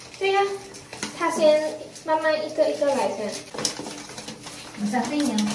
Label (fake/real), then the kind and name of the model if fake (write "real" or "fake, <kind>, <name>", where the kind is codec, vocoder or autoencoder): real